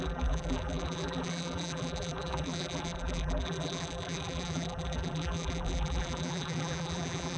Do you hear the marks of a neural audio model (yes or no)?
yes